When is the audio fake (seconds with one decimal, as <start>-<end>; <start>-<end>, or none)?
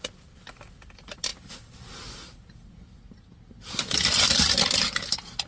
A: none